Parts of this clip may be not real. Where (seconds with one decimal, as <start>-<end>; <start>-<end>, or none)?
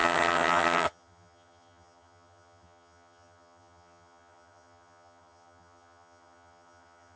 0.0-7.2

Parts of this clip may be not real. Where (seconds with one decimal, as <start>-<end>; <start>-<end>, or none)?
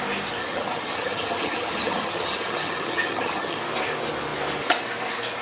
0.4-3.6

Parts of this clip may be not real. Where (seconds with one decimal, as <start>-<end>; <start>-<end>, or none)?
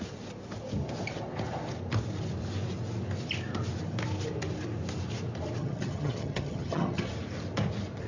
5.6-7.1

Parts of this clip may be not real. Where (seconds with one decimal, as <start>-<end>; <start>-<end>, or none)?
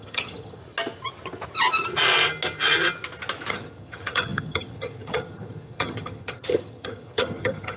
0.0-0.6; 3.5-7.8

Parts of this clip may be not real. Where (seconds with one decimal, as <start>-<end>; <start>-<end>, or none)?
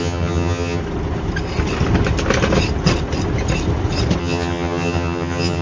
0.0-0.8; 4.2-5.6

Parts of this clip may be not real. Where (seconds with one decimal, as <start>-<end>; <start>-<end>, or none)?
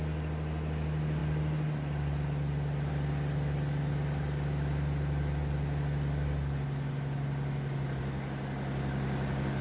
none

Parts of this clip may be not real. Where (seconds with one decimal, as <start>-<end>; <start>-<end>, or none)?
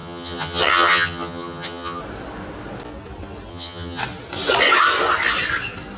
0.0-2.0; 3.5-4.0